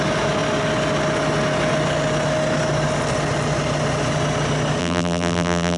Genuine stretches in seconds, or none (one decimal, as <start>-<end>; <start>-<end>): 0.0-4.8